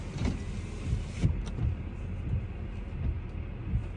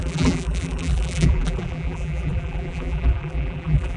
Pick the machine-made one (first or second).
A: second